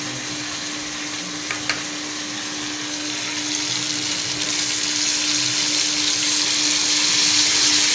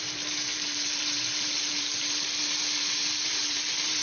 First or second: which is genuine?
first